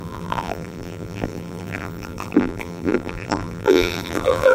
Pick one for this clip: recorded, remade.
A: remade